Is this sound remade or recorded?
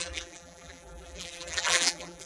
remade